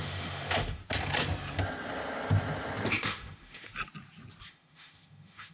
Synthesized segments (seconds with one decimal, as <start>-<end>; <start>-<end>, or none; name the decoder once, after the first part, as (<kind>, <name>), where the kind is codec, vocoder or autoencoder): 0.0-0.8 (autoencoder, DAC-VAE); 2.9-3.7; 4.5-5.5